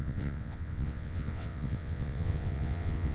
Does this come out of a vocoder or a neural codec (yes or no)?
yes